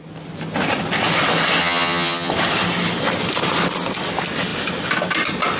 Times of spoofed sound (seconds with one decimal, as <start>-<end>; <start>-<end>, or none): 1.6-2.3